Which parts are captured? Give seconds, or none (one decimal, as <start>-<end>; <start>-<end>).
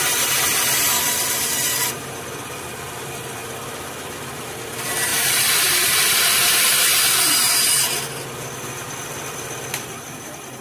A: 0.0-5.1; 6.8-10.6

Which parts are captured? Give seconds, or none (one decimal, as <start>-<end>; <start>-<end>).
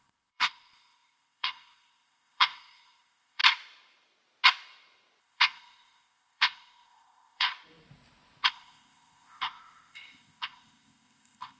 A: 3.4-5.2; 7.5-8.5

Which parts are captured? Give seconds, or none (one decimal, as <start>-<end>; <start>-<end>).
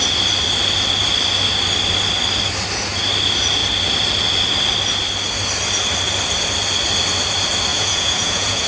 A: 0.0-7.7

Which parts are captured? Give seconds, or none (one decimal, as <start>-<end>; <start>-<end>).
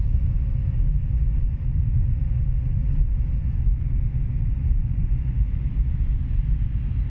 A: 0.0-4.8; 5.6-7.1